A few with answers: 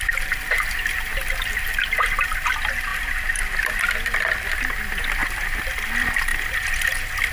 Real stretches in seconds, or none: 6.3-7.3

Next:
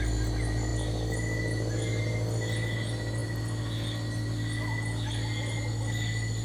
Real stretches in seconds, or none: 0.0-6.4